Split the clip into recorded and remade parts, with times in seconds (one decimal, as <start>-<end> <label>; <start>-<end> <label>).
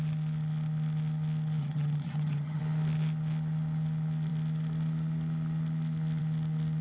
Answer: 0.0-1.6 recorded; 1.6-2.6 remade; 2.6-6.8 recorded